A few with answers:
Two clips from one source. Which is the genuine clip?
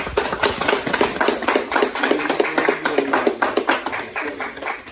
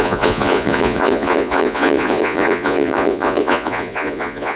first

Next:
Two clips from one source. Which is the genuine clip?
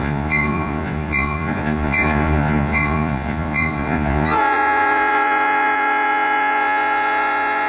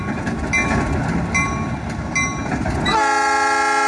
second